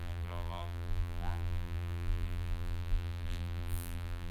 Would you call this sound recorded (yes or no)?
no